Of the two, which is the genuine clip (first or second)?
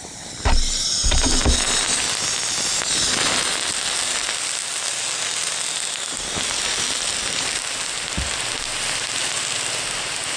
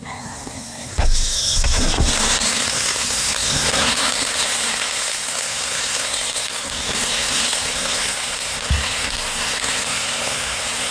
first